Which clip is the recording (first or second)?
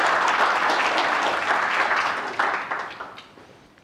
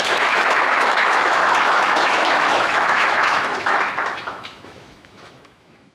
first